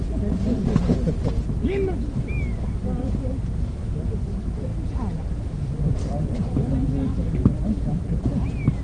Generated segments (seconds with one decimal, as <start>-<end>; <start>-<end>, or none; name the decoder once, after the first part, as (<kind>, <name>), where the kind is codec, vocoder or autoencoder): none